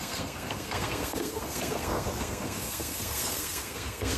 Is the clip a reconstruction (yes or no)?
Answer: yes